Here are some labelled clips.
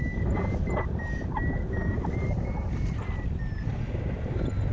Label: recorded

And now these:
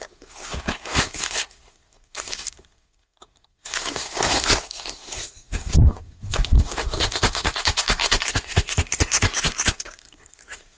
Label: remade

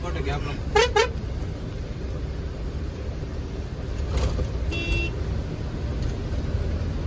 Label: recorded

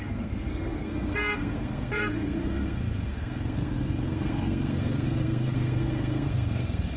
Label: remade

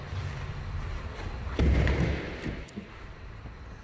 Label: recorded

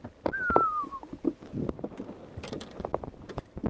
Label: recorded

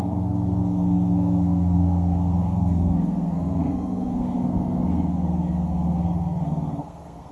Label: remade